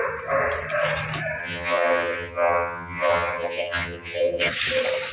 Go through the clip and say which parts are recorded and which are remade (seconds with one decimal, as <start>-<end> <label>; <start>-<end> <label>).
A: 0.0-1.4 recorded; 1.4-4.5 remade; 4.5-5.1 recorded